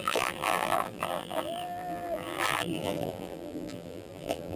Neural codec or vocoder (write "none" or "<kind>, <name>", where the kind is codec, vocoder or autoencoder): vocoder, BigVGAN v2